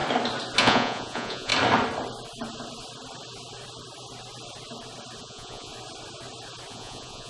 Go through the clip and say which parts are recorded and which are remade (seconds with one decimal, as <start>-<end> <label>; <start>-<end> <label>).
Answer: 0.0-0.6 recorded; 0.6-1.5 remade; 1.5-5.2 recorded; 5.2-5.7 remade; 5.7-6.7 recorded; 6.7-7.3 remade